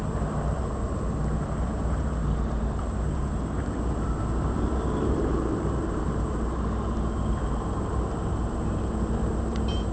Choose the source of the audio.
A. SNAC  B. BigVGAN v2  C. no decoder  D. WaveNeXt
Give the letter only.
B